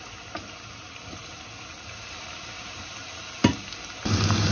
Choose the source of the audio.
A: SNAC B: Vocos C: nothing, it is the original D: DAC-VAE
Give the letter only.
C